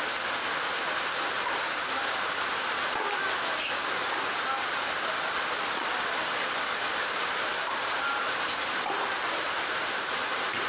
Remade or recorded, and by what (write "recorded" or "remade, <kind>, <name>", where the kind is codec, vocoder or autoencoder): recorded